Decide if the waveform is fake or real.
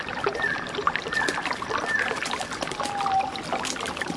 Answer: real